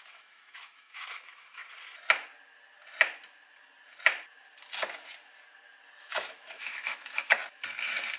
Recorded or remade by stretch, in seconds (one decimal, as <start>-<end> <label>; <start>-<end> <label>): 0.0-1.6 remade; 1.6-6.0 recorded; 6.0-7.4 remade; 7.4-8.2 recorded